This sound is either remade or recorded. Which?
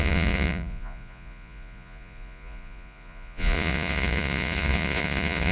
remade